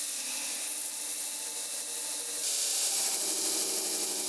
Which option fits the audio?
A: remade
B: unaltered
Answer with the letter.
B